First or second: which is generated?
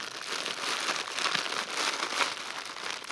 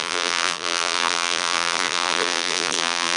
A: second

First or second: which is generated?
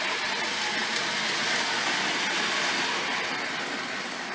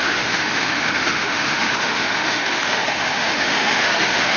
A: second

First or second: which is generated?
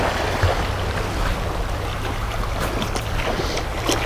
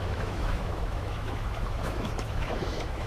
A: second